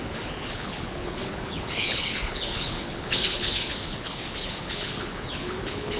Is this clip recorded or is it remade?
remade